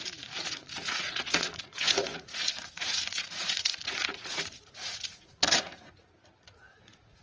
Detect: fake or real fake